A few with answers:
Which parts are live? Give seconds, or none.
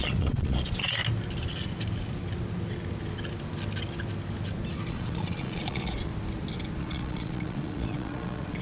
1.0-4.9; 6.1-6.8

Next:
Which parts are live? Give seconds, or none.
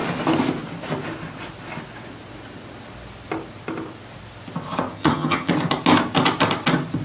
0.0-4.9; 5.5-7.0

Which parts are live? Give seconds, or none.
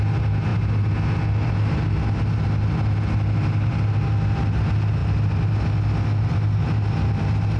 0.0-7.6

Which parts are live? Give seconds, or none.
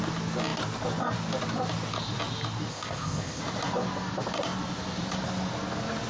0.0-2.7; 3.4-6.1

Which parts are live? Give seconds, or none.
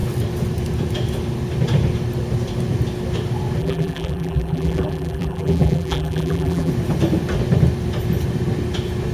0.0-3.6; 6.7-9.1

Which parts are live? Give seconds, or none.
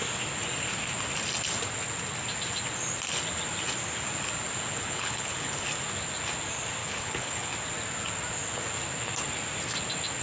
0.0-4.7; 5.7-6.8; 7.5-10.2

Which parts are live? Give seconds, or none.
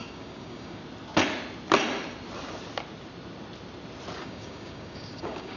0.8-4.2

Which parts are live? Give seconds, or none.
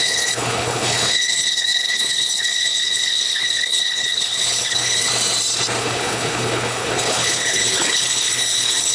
5.1-5.8